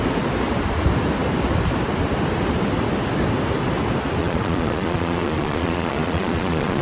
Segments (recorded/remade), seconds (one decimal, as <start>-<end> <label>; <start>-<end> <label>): 0.0-4.2 recorded; 4.2-6.8 remade